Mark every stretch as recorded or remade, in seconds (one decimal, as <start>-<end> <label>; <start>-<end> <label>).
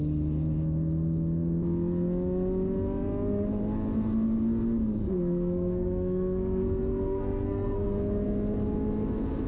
0.0-5.0 recorded; 5.0-8.1 remade; 8.1-9.5 recorded